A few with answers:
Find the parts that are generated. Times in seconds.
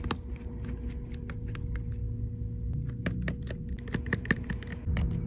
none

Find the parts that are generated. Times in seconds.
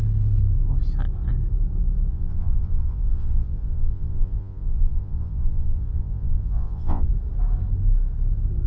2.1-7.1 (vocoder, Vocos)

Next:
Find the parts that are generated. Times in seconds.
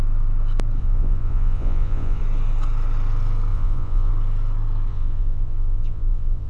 0.8-2.2 (vocoder, Vocos); 3.5-4.1; 4.9-6.5